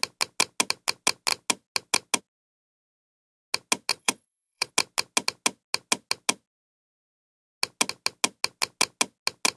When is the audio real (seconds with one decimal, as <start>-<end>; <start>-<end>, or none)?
0.0-3.9; 4.7-9.6